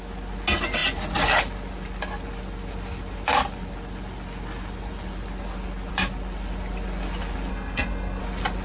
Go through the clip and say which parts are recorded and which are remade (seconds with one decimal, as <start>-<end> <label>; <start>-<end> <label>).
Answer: 0.0-7.5 recorded; 7.5-8.2 remade; 8.2-8.6 recorded